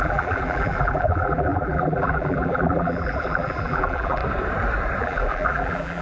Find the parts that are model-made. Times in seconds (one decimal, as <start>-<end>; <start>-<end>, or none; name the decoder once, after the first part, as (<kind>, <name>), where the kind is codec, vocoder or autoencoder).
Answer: 0.0-4.2 (vocoder, BigVGAN v2); 5.0-6.0